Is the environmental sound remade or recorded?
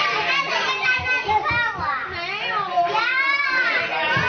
recorded